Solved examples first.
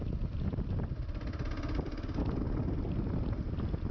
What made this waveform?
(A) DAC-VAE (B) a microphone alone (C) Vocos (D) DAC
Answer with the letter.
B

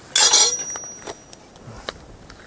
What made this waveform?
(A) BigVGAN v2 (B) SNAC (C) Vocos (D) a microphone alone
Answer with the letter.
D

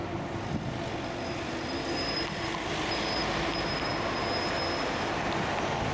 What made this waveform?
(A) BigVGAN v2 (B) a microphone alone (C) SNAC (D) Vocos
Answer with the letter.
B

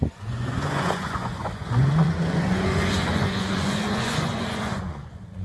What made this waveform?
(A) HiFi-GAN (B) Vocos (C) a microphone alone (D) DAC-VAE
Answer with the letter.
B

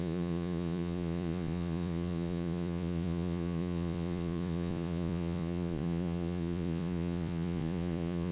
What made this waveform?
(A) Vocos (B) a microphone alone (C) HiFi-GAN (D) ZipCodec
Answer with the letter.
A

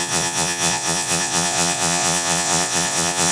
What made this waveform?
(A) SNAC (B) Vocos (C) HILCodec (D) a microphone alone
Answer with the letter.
B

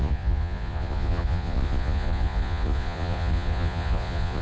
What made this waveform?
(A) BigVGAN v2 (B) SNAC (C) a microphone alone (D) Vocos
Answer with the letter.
D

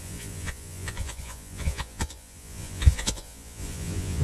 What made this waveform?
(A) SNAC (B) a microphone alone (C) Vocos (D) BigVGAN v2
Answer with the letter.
C